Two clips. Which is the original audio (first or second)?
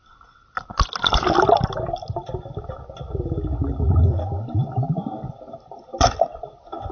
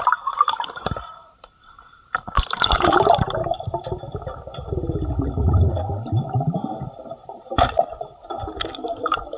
first